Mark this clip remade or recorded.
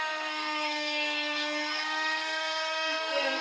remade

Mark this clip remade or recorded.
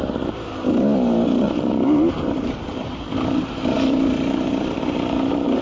remade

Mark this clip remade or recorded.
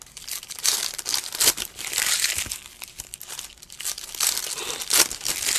recorded